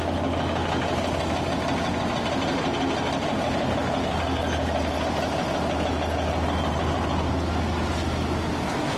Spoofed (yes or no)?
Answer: no